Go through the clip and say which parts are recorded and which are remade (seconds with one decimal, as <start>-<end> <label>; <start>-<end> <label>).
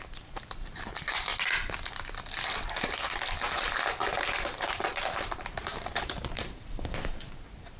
0.0-1.3 remade; 1.3-3.6 recorded; 3.6-7.8 remade